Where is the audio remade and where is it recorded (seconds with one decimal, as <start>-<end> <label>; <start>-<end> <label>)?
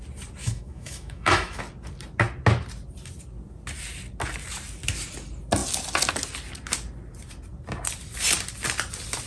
0.0-0.4 recorded; 0.4-1.6 remade; 1.6-9.3 recorded